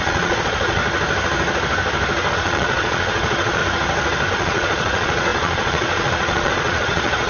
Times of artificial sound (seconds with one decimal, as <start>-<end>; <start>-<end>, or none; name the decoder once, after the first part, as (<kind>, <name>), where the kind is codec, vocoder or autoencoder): 0.0-0.8 (vocoder, Vocos); 2.3-3.6; 4.3-7.3